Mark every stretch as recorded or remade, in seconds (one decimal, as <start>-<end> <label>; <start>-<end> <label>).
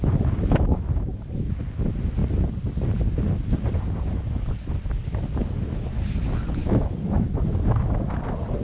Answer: 0.0-1.6 remade; 1.6-6.6 recorded; 6.6-8.1 remade; 8.1-8.6 recorded